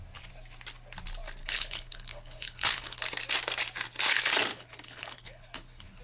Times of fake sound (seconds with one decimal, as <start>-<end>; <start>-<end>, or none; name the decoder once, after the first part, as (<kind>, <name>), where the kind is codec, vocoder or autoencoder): 1.4-3.0 (codec, HILCodec); 4.5-6.0